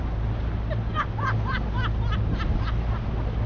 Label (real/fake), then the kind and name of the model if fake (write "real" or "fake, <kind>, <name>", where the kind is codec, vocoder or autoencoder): real